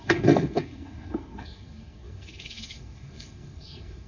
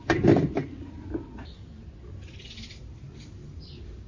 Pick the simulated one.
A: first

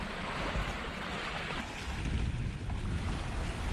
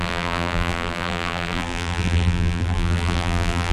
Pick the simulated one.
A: second